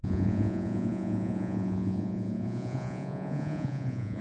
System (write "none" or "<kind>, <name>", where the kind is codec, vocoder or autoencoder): vocoder, Vocos